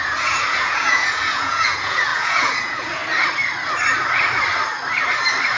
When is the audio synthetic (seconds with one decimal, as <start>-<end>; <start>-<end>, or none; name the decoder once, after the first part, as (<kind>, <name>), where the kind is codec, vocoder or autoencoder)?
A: 0.0-3.0 (vocoder, Vocos)